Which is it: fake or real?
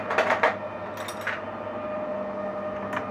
real